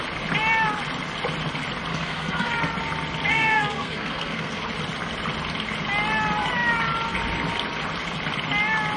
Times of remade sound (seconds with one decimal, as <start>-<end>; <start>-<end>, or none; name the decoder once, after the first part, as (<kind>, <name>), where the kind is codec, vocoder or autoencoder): 1.9-2.5 (codec, SNAC); 3.3-4.6